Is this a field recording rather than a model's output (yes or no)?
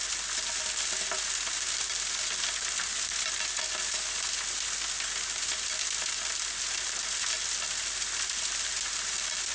yes